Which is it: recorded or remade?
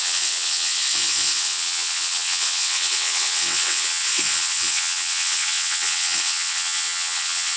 remade